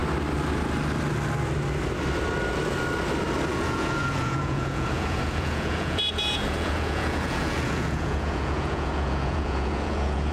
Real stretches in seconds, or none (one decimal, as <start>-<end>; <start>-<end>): 0.0-3.5